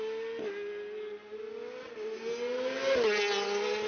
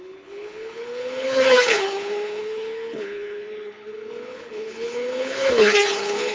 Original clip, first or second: first